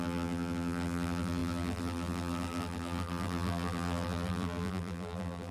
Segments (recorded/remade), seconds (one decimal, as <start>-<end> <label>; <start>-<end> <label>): 0.0-5.5 remade